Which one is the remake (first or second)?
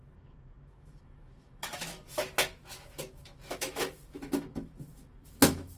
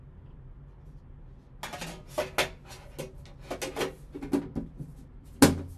first